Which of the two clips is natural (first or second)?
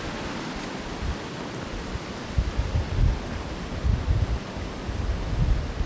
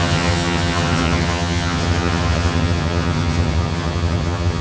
first